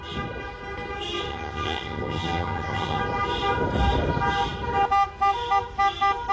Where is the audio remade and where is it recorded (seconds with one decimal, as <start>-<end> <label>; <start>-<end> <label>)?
0.0-1.3 recorded; 1.3-3.0 remade; 3.0-6.3 recorded